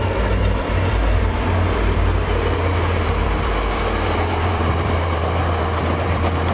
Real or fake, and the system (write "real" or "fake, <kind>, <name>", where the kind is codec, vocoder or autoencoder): fake, vocoder, BigVGAN v2